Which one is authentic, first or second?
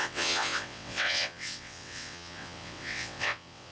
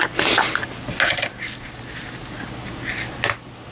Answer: second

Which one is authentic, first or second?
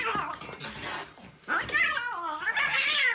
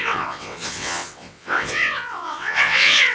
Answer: first